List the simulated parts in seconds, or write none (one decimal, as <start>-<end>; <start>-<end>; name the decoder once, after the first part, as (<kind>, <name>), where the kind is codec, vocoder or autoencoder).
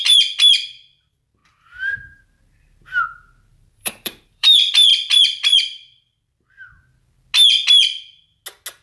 3.5-4.5 (vocoder, BigVGAN v2)